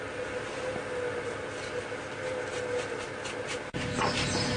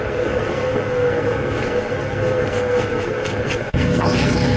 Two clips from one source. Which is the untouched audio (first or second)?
first